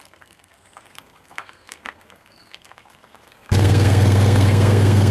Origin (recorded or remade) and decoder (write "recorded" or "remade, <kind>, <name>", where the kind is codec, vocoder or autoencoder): remade, codec, SNAC